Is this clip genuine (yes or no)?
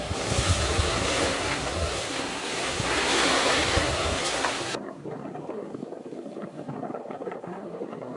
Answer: no